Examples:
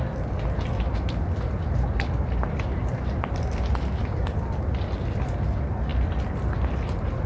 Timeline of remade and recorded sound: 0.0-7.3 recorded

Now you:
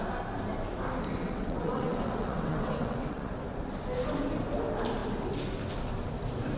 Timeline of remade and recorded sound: 0.0-1.2 recorded; 1.2-3.3 remade; 3.3-6.6 recorded

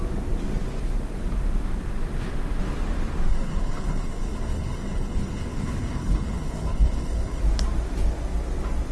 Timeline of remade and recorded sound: 0.0-3.3 recorded; 3.3-7.4 remade; 7.4-8.9 recorded

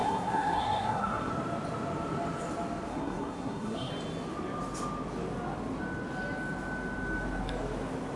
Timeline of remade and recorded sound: 0.0-1.3 remade; 1.3-2.9 recorded; 2.9-3.9 remade; 3.9-8.2 recorded

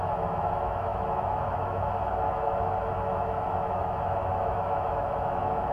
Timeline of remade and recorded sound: 0.0-5.7 remade